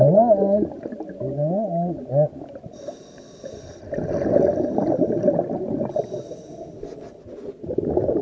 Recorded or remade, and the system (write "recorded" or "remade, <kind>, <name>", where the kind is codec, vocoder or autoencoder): recorded